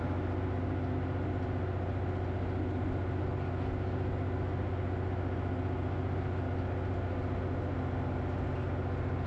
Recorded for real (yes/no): yes